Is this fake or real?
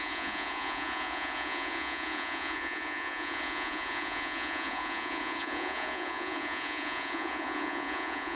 fake